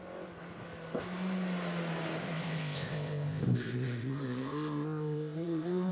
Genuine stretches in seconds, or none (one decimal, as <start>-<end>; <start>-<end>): 0.0-2.2

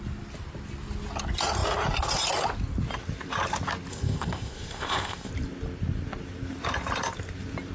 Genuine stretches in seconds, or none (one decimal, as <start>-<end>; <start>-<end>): 0.0-3.9; 5.3-7.7

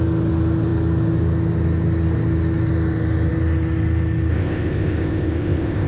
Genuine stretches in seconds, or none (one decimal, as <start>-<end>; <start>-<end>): 0.0-4.3

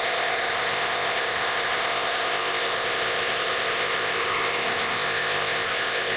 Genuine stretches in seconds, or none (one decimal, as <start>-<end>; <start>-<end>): none

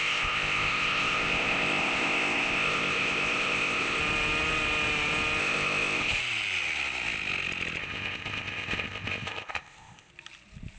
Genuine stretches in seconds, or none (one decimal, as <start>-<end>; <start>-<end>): 4.0-5.4; 6.2-7.8; 10.1-10.8